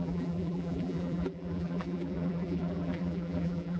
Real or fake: fake